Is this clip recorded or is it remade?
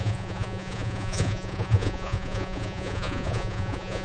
remade